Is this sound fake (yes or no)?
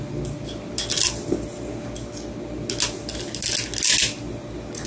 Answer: no